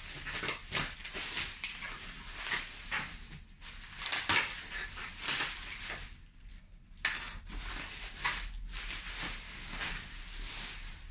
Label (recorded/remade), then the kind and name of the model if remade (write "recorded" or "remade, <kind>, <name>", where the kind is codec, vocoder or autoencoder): recorded